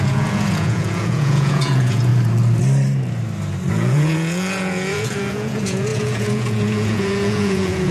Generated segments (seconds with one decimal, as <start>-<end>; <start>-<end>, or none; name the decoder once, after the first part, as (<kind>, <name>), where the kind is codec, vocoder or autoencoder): 0.0-2.1 (vocoder, Vocos); 3.7-7.9